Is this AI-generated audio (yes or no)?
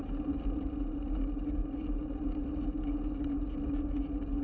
no